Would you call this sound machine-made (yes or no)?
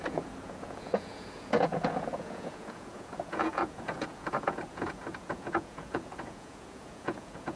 yes